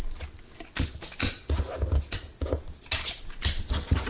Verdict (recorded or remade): recorded